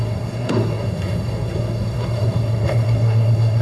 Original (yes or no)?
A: no